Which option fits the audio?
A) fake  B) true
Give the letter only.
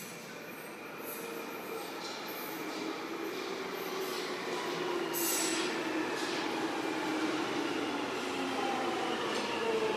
B